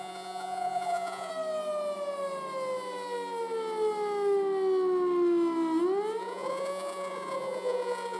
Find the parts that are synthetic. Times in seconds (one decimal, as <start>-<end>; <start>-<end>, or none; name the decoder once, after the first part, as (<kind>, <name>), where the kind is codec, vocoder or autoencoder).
0.0-1.3 (vocoder, Vocos); 6.2-8.2